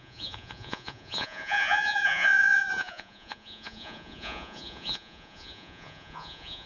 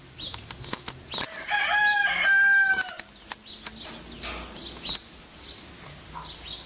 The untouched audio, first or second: second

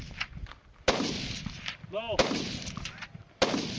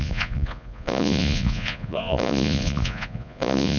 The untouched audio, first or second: first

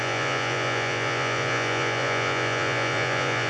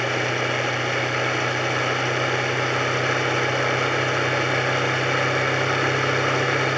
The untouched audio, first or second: second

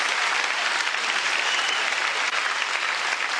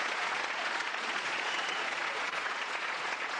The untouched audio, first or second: first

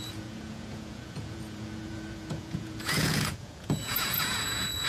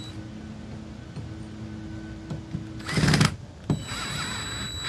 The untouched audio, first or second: second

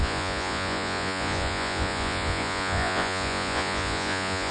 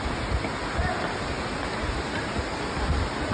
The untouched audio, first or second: second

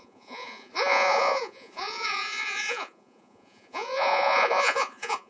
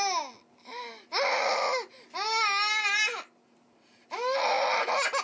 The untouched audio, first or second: second